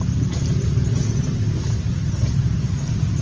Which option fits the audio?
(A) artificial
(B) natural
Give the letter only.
B